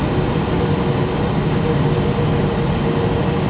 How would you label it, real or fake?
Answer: real